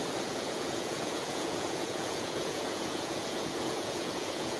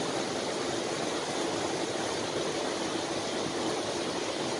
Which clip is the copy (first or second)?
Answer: first